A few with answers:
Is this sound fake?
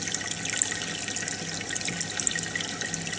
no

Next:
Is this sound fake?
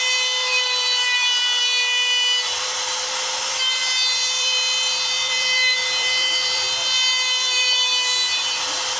yes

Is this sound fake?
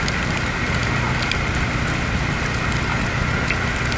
no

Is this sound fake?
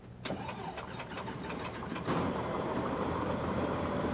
yes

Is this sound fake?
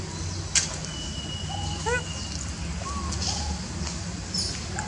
no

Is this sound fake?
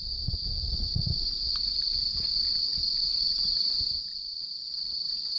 no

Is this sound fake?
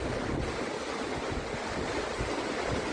no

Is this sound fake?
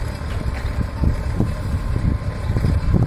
yes